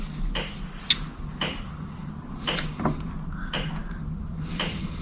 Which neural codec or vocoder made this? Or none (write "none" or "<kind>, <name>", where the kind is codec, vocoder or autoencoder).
none